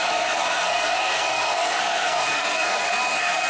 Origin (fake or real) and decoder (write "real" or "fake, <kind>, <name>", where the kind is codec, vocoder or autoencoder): fake, codec, SNAC